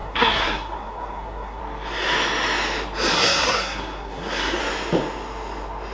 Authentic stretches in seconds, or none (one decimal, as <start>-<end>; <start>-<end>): 1.6-3.1; 4.6-5.9